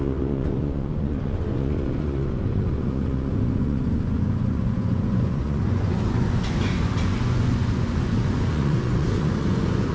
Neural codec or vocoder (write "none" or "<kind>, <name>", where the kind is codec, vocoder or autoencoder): vocoder, Vocos